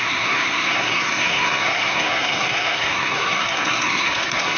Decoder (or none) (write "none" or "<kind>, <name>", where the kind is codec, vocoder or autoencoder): codec, SNAC